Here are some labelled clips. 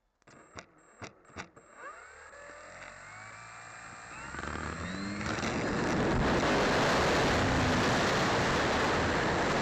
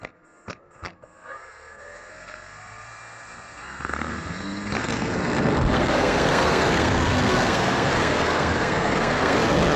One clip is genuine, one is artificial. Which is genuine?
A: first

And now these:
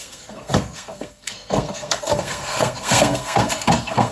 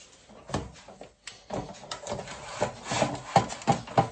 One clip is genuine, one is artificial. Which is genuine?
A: second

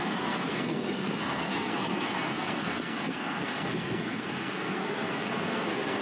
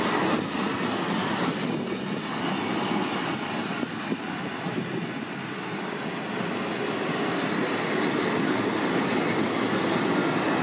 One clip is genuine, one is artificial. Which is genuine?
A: second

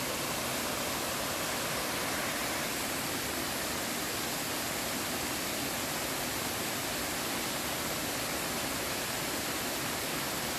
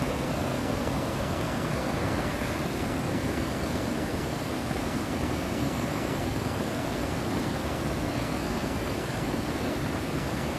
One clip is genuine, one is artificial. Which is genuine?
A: first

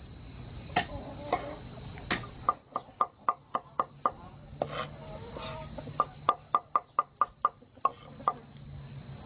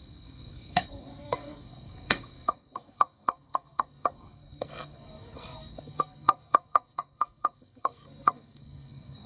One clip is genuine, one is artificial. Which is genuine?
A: first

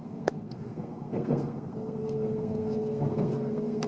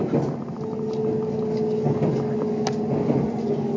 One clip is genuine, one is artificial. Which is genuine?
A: second